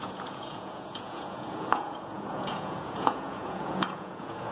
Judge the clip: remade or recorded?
remade